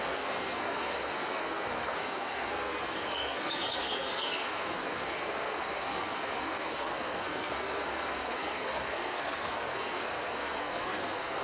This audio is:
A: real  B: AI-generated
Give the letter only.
B